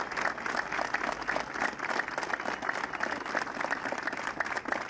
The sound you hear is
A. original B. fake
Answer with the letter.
A